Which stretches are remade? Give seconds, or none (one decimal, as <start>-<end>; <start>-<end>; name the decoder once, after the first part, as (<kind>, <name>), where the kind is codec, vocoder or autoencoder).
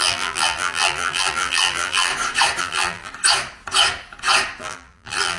0.0-2.1 (vocoder, BigVGAN v2); 2.6-3.1; 4.6-5.4